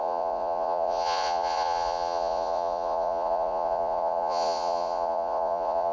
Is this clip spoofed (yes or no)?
yes